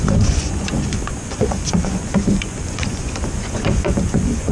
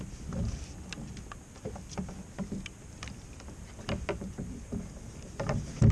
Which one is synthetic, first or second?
first